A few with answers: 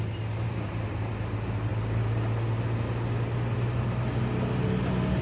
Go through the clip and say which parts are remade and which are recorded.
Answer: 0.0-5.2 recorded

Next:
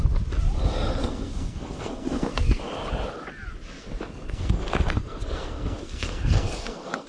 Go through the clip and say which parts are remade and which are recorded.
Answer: 0.0-1.0 recorded; 1.0-2.6 remade; 2.6-3.8 recorded; 3.8-7.1 remade

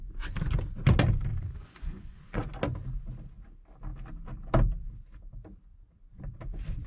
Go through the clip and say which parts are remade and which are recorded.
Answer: 0.0-1.3 recorded; 1.3-2.5 remade; 2.5-6.9 recorded